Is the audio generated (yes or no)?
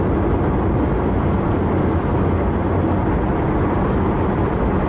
no